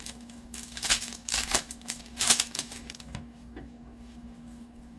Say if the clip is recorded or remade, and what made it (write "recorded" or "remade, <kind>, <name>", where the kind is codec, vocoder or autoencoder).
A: remade, codec, DAC